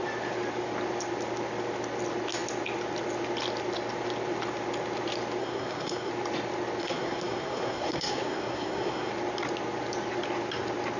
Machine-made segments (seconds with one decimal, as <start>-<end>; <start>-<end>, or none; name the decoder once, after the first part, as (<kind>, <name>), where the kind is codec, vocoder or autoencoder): 5.4-6.1 (codec, SNAC); 6.8-9.1